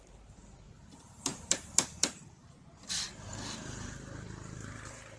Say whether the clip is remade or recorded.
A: remade